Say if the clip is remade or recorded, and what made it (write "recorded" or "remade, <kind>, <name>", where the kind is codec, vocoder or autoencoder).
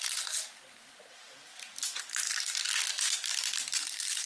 recorded